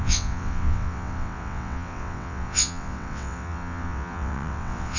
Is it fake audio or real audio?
fake